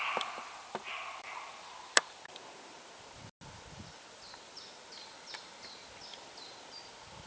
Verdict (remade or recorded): recorded